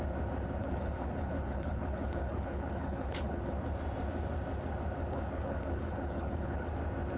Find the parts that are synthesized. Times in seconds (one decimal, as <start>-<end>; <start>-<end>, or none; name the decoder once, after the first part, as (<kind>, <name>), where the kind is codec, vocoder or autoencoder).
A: 0.6-3.4 (codec, HILCodec); 5.1-6.7